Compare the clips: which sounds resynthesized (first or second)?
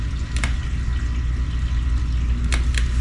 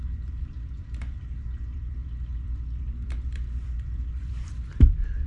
second